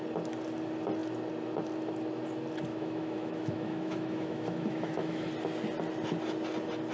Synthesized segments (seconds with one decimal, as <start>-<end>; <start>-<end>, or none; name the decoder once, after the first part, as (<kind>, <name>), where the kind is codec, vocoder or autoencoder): 2.7-5.3 (autoencoder, DAC-VAE)